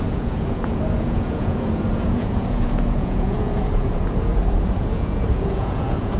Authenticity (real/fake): fake